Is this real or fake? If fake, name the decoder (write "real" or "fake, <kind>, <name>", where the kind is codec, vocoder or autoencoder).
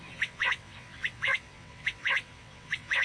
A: fake, vocoder, WaveNeXt